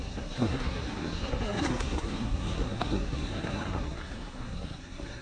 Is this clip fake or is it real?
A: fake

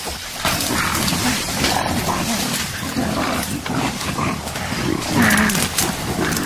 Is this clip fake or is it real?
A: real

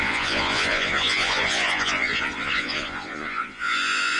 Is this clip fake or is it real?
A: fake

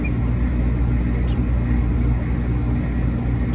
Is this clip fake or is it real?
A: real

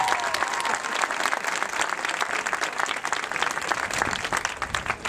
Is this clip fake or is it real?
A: real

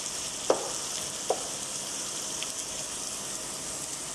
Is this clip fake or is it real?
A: real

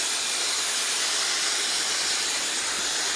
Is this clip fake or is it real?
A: real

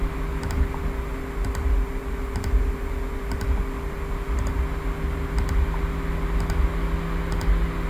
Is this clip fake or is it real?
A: real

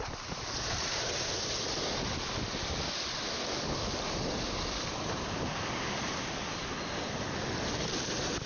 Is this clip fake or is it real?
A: real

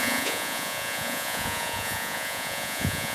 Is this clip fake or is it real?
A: fake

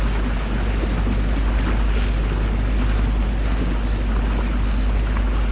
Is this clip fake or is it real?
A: real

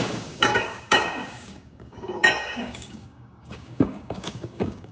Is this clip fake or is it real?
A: fake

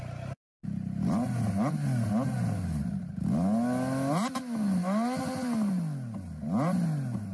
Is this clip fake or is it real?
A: real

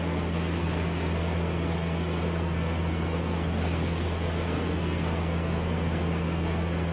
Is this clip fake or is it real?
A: fake